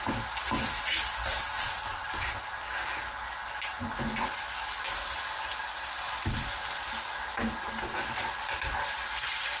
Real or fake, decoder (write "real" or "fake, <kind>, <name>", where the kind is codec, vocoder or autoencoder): real